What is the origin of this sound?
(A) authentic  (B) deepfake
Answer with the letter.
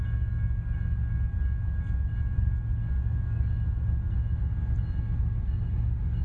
A